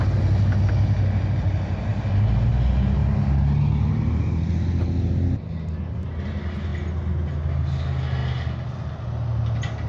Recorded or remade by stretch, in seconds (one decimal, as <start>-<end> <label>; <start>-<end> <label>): 0.0-9.9 recorded